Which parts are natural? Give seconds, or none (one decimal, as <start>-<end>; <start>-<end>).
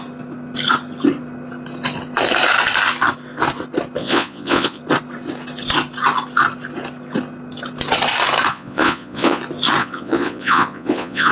0.0-4.0; 4.8-8.5; 9.4-9.8